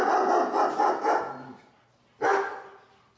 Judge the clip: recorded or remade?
recorded